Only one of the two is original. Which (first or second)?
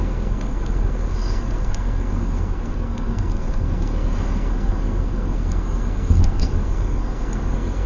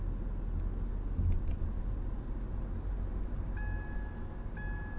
second